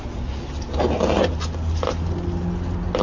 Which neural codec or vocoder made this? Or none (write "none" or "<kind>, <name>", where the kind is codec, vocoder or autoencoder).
none